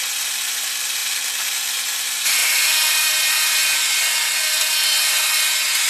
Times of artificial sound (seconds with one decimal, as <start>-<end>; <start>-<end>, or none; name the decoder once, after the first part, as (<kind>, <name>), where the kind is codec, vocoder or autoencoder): 2.4-2.9 (vocoder, BigVGAN v2); 3.6-5.1